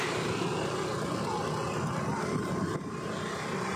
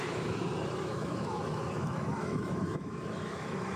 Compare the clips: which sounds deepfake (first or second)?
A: second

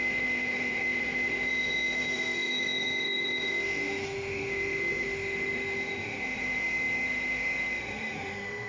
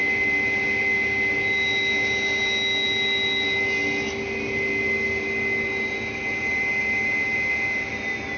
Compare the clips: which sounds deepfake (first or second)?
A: first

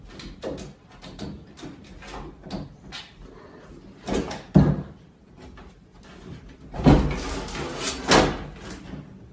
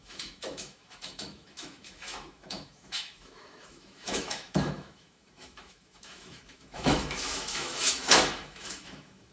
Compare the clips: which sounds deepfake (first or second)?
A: second